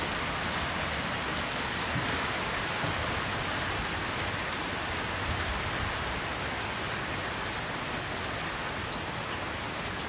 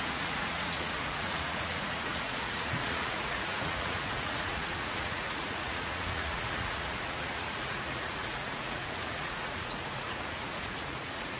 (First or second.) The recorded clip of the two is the first